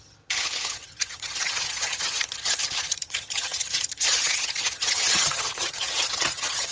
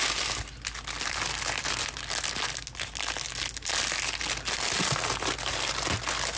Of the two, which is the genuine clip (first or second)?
second